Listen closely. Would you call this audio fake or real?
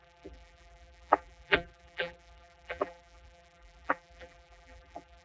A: fake